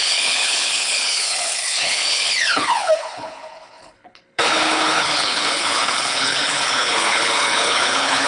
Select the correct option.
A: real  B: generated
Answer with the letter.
B